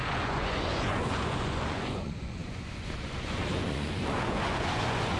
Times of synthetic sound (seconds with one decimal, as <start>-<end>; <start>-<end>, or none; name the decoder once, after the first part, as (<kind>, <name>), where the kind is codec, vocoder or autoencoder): 0.0-5.2 (vocoder, Vocos)